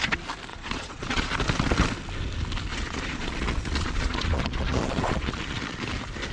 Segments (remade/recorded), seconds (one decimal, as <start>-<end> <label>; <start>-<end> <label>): 0.0-0.5 recorded; 0.5-1.3 remade; 1.3-2.7 recorded; 2.7-5.8 remade; 5.8-6.3 recorded